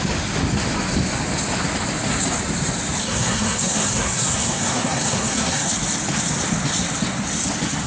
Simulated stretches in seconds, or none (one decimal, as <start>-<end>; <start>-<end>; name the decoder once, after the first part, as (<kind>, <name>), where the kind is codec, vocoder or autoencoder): 3.0-5.7 (codec, SNAC)